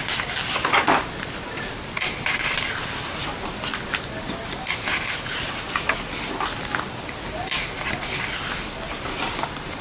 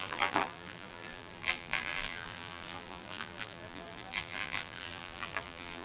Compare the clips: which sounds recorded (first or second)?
first